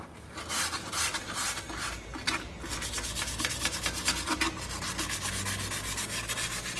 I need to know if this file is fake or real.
real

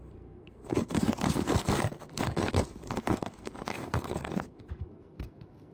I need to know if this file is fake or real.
fake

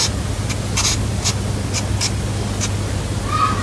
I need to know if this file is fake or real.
real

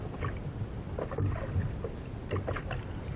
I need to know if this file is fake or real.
real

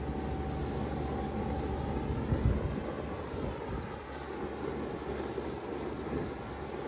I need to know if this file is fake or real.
real